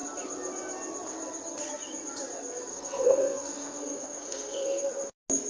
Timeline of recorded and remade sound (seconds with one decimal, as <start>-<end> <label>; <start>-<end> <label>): 0.0-2.7 recorded; 2.7-4.9 remade; 4.9-5.5 recorded